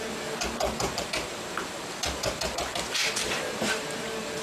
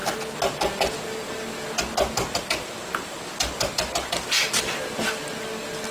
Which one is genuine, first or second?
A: second